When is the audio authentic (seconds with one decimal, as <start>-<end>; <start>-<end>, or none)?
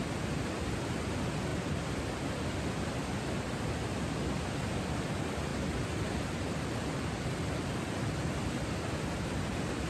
0.0-5.5; 9.3-9.9